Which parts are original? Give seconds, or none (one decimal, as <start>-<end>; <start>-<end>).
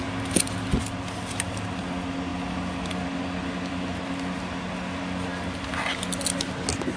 0.0-7.0